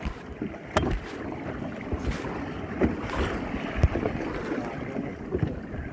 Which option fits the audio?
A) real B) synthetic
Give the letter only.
A